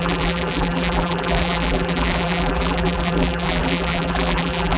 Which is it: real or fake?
fake